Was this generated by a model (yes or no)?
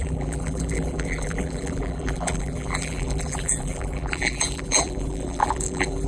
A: yes